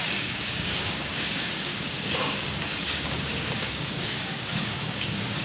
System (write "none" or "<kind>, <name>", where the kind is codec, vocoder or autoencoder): codec, DAC